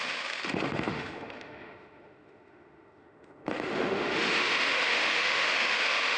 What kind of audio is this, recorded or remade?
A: remade